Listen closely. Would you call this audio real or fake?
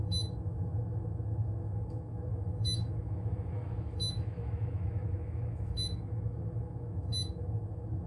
fake